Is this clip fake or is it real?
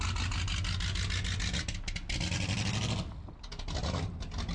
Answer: real